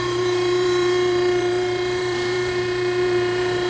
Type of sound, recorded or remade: remade